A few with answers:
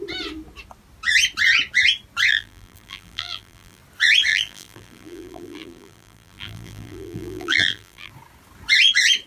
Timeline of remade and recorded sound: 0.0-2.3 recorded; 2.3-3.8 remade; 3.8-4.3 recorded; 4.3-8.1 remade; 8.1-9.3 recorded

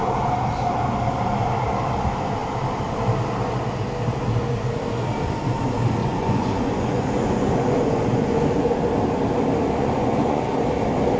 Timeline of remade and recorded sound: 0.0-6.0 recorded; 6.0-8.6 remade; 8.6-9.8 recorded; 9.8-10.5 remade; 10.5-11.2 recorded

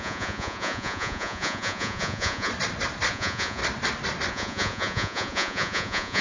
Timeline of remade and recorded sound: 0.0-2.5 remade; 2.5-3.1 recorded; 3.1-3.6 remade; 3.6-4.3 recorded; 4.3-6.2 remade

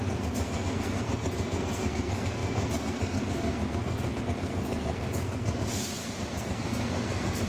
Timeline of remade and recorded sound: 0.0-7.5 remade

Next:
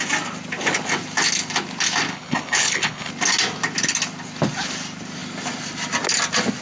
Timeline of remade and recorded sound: 0.0-2.1 recorded; 2.1-3.1 remade; 3.1-6.6 recorded

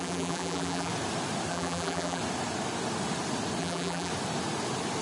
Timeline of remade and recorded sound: 0.0-0.9 remade; 0.9-1.5 recorded; 1.5-2.2 remade; 2.2-3.6 recorded; 3.6-4.1 remade; 4.1-5.0 recorded

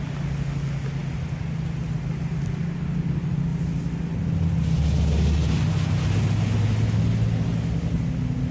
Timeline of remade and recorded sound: 0.0-8.5 recorded